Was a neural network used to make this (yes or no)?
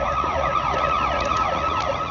yes